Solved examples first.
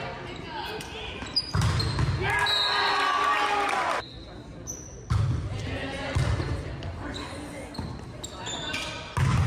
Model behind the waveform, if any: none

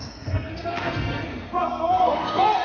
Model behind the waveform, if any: codec, SNAC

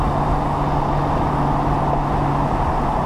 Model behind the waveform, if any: none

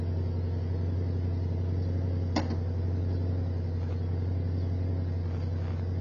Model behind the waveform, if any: none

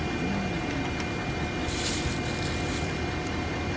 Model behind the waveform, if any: none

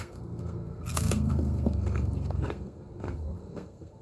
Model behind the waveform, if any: codec, SNAC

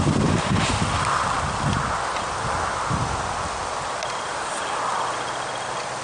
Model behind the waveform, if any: none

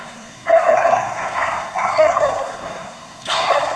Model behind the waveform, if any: codec, SNAC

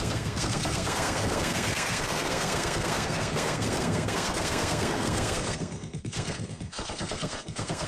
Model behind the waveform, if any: codec, SNAC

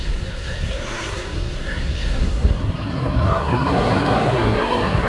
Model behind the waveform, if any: codec, SNAC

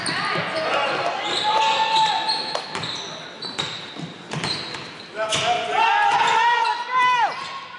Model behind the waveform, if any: none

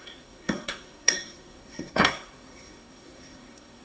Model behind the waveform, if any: codec, SNAC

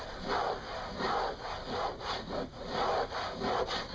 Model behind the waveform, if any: none